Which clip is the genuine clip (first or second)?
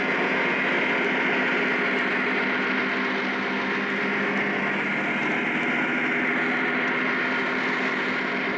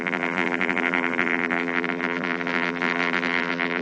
first